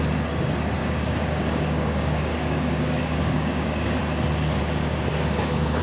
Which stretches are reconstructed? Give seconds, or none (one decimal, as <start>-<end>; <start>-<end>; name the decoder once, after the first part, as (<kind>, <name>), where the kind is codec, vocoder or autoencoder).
0.8-4.0 (codec, DAC); 4.6-5.8